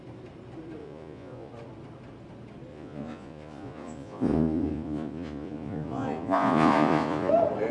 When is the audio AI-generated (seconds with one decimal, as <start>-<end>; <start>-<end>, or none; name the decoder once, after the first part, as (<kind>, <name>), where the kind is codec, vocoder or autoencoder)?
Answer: 0.8-1.5 (vocoder, Vocos); 2.7-7.3